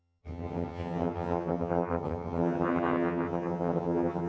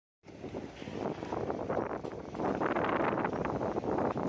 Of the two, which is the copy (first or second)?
first